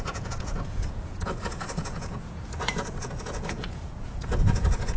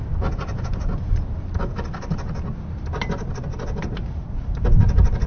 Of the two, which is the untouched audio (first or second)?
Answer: second